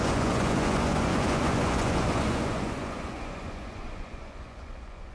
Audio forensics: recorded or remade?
remade